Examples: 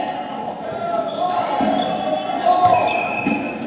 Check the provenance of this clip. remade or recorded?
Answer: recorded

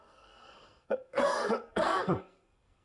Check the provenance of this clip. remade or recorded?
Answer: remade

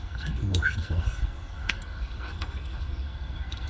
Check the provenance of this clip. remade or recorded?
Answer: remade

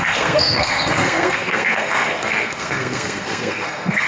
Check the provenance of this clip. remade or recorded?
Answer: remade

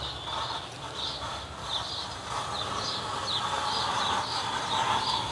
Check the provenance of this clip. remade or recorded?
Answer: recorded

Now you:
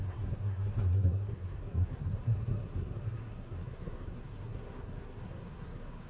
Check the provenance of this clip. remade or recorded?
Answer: remade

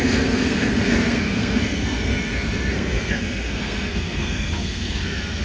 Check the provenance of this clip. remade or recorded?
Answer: remade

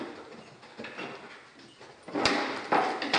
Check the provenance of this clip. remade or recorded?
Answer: recorded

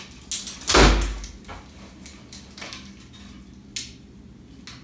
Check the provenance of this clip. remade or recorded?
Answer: recorded